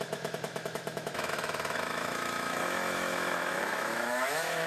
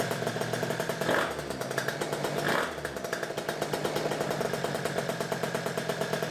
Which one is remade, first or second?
first